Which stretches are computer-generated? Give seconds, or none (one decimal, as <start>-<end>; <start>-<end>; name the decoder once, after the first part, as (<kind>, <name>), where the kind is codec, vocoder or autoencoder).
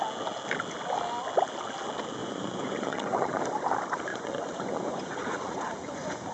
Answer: 2.2-3.4 (vocoder, Vocos); 4.1-6.3